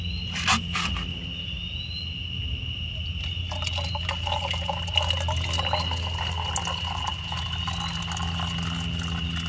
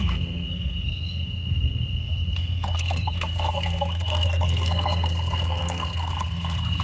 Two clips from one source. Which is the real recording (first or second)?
first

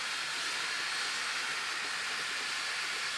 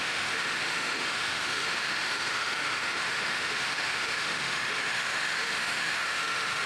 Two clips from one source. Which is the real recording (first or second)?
first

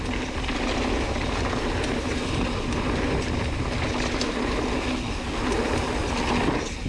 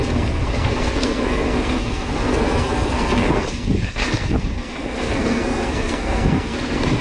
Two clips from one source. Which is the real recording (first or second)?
first